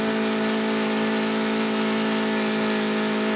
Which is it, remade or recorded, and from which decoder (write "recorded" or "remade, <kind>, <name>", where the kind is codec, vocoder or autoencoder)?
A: recorded